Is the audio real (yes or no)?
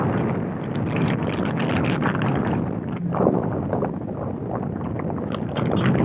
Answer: yes